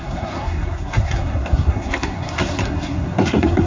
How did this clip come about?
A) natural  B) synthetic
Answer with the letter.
B